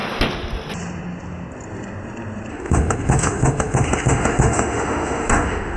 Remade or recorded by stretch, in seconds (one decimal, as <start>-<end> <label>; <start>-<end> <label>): 0.0-2.5 recorded; 2.5-5.8 remade